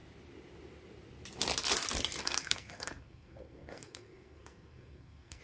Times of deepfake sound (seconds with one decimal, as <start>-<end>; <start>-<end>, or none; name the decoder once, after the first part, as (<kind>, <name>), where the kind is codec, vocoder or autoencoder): 2.2-5.4 (codec, SNAC)